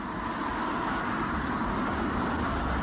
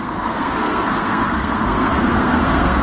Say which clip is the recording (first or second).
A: first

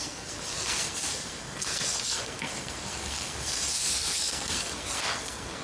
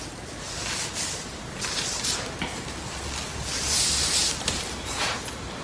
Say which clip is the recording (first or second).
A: second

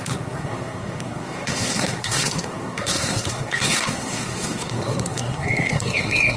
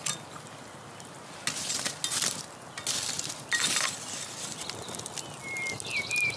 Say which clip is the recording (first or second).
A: second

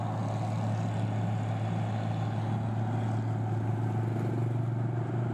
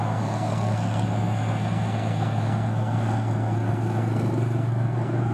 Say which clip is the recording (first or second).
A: first